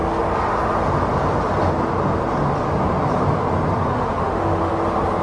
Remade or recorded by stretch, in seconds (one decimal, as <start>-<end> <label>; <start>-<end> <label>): 0.0-3.9 recorded; 3.9-4.7 remade; 4.7-5.2 recorded